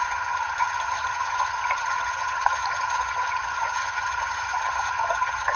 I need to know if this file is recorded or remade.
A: remade